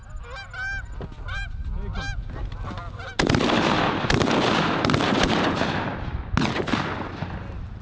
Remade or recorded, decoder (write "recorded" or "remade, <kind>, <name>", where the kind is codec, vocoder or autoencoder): recorded